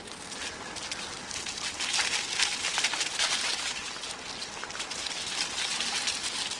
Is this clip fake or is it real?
real